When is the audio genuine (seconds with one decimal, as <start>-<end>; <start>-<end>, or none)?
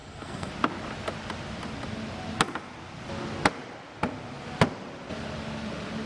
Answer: 0.5-6.1